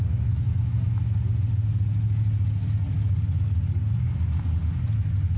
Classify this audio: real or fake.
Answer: real